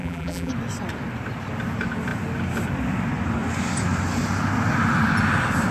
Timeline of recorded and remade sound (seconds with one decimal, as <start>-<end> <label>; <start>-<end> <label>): 0.0-0.5 remade; 0.5-5.7 recorded